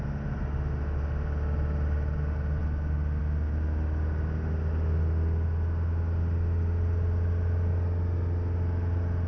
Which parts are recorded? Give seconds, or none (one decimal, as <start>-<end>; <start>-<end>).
0.0-9.3